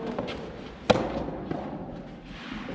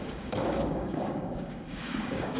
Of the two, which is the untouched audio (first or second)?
first